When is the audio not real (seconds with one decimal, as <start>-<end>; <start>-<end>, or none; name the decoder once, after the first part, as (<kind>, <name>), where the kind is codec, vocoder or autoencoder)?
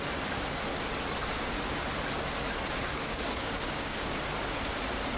2.9-4.0 (codec, DAC)